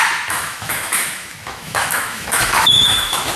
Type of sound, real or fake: fake